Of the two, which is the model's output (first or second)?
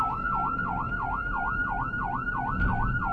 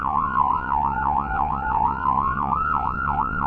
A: second